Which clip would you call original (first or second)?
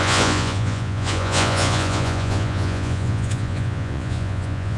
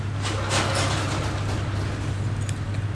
second